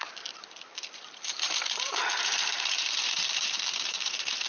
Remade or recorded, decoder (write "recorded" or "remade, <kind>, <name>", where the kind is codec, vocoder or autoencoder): remade, vocoder, BigVGAN v2